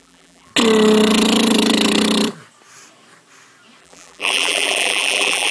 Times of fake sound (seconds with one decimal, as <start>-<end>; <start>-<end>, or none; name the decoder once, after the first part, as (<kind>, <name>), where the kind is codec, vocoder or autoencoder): 0.0-0.5 (vocoder, BigVGAN v2); 3.8-5.5